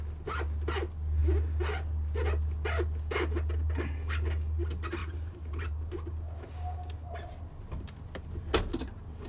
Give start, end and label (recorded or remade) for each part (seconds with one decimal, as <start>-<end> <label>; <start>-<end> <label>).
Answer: 0.0-5.0 recorded; 5.0-5.8 remade; 5.8-9.3 recorded